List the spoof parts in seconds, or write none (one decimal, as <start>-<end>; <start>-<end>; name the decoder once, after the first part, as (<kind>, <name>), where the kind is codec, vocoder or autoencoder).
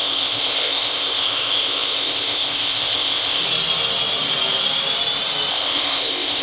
0.0-3.4 (codec, ZipCodec); 5.5-6.4